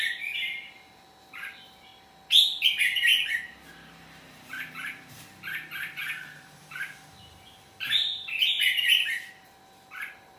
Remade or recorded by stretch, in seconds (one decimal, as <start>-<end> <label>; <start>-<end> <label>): 0.0-1.9 remade; 1.9-2.7 recorded; 2.7-10.4 remade